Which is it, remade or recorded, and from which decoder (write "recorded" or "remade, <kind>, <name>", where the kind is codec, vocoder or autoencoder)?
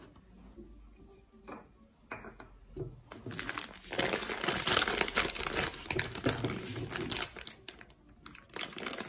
recorded